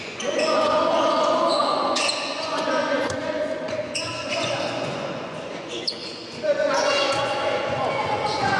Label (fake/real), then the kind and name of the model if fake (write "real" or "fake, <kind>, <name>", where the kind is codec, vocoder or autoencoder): fake, vocoder, Vocos